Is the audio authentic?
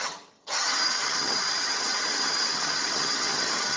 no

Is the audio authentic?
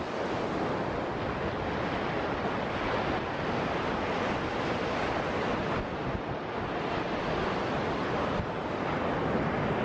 yes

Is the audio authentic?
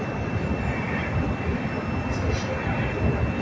yes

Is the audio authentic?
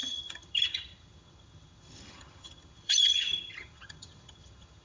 no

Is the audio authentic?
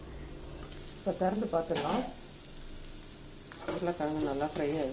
yes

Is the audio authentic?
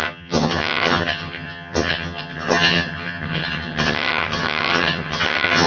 no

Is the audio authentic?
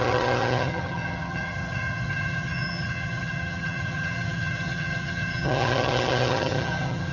no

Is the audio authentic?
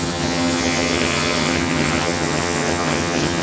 no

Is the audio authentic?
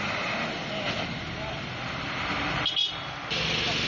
yes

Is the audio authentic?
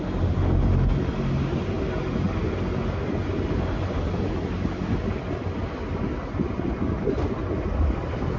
yes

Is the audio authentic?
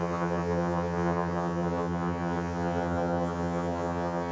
no